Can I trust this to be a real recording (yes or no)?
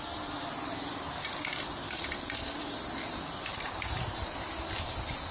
yes